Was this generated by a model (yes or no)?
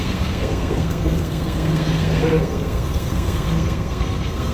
yes